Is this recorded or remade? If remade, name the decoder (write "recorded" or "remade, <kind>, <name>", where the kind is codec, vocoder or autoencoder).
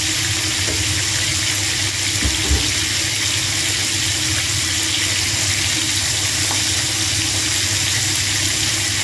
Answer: recorded